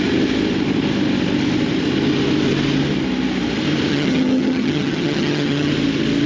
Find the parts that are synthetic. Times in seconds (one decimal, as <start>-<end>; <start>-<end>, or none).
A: 3.9-5.7